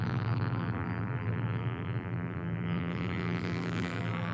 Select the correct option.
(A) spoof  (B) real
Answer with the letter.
A